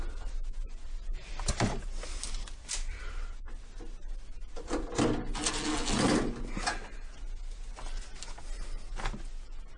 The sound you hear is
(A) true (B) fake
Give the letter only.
A